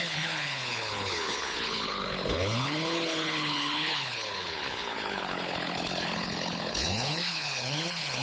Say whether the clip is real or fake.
fake